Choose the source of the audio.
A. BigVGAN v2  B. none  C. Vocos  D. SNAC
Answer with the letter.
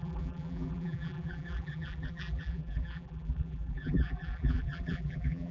A